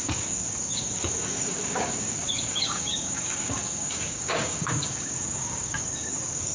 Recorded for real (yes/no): no